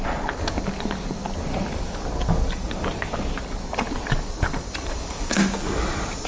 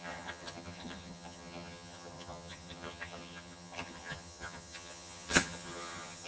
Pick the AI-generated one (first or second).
second